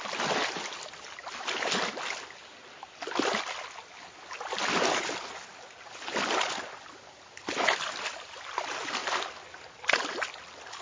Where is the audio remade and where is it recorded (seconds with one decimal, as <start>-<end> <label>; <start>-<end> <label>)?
0.0-10.8 recorded